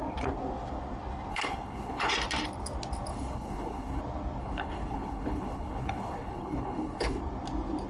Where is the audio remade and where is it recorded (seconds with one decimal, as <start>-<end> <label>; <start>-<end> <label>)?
0.0-1.3 recorded; 1.3-2.1 remade; 2.1-3.1 recorded; 3.1-4.0 remade; 4.0-4.4 recorded; 4.4-7.2 remade; 7.2-7.9 recorded

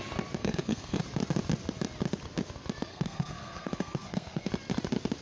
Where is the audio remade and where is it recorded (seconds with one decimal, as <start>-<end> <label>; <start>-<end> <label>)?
0.0-0.4 recorded; 0.4-1.0 remade; 1.0-2.9 recorded; 2.9-4.5 remade; 4.5-5.2 recorded

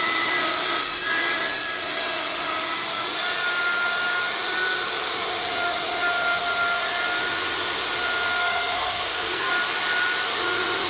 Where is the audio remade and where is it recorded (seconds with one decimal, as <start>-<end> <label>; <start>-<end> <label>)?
0.0-8.4 recorded; 8.4-9.5 remade; 9.5-10.9 recorded

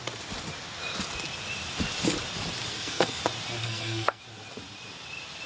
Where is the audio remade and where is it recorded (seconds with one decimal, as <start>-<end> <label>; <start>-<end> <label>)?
0.0-2.7 recorded; 2.7-3.2 remade; 3.2-3.6 recorded; 3.6-4.2 remade; 4.2-5.5 recorded

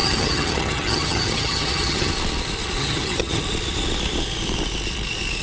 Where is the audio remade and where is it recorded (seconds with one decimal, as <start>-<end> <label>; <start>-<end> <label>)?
0.0-2.1 remade; 2.1-2.8 recorded; 2.8-3.4 remade; 3.4-5.4 recorded

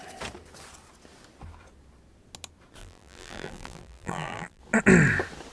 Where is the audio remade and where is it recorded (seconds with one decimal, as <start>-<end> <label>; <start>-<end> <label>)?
0.0-2.8 recorded; 2.8-4.6 remade; 4.6-5.5 recorded

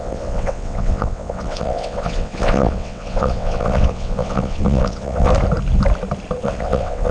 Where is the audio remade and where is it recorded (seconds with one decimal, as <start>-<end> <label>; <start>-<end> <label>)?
0.0-5.3 remade; 5.3-6.4 recorded; 6.4-7.1 remade

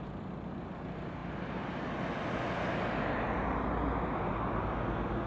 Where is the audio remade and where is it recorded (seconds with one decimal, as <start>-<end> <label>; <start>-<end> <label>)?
0.0-5.3 recorded